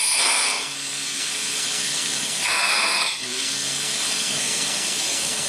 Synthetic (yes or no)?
yes